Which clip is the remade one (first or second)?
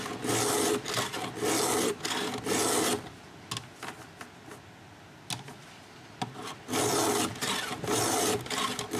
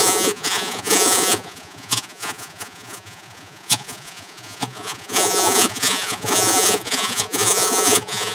second